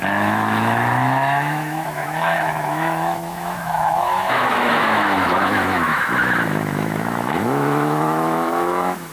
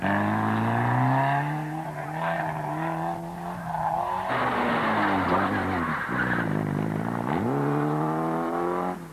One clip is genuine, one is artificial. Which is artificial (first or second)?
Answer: first